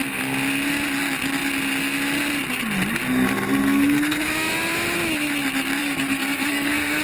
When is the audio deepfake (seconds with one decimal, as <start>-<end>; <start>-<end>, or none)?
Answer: 3.6-4.3; 5.8-7.0